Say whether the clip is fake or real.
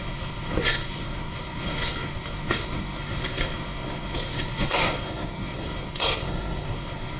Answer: fake